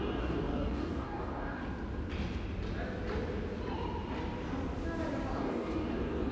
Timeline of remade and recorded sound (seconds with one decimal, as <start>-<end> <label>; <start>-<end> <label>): 0.0-1.6 remade; 1.6-5.4 recorded; 5.4-6.3 remade